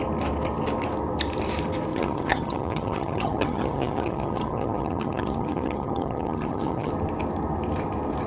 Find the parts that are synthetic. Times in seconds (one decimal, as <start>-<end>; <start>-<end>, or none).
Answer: 1.9-6.9